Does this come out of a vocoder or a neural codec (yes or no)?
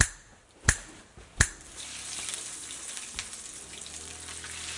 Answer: no